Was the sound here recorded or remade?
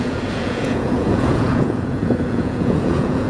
remade